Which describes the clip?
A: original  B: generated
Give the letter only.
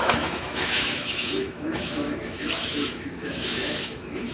B